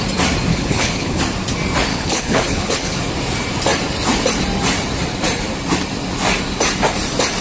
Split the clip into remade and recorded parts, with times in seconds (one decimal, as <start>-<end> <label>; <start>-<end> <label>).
0.0-0.5 recorded; 0.5-1.2 remade; 1.2-1.9 recorded; 1.9-3.0 remade; 3.0-7.4 recorded